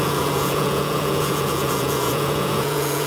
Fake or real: fake